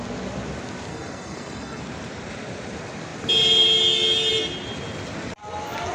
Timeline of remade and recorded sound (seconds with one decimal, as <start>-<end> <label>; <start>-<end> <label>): 0.0-0.9 recorded; 0.9-1.8 remade; 1.8-5.9 recorded